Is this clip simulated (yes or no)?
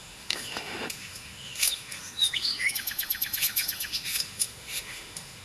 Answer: yes